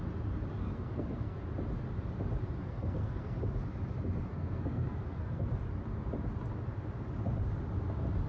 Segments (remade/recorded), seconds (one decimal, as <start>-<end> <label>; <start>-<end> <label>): 0.0-0.6 recorded; 0.6-1.4 remade; 1.4-2.6 recorded; 2.6-3.4 remade; 3.4-4.3 recorded; 4.3-5.5 remade; 5.5-8.3 recorded